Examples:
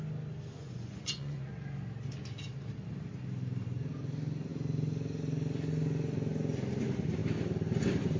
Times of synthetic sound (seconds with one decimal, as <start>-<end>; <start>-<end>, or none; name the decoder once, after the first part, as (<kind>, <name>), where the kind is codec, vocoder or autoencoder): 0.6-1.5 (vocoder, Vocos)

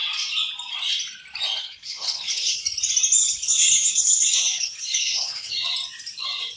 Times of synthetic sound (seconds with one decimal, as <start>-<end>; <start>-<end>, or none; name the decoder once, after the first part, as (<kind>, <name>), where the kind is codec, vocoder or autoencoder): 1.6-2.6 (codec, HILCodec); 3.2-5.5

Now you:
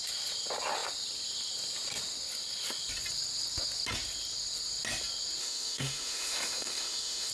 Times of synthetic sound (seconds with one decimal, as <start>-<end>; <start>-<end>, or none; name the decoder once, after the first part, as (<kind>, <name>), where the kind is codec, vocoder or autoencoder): 5.4-7.3 (autoencoder, DAC-VAE)

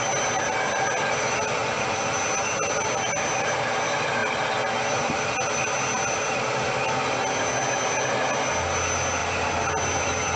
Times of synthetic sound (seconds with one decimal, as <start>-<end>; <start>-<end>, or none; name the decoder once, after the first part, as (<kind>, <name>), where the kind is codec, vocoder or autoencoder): none

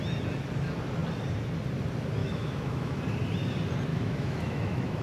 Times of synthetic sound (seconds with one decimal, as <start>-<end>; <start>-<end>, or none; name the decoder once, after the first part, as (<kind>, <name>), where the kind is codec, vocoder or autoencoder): 2.2-3.0 (autoencoder, DAC-VAE); 3.9-5.0

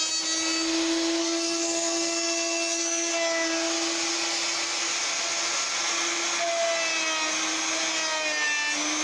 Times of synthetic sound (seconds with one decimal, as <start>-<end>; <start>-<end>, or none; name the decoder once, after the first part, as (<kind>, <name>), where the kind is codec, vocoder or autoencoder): 1.2-3.1 (codec, SNAC)

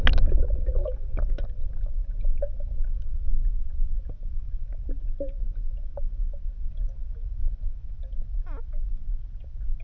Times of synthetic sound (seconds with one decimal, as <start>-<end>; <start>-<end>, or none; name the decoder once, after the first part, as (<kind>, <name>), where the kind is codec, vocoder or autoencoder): none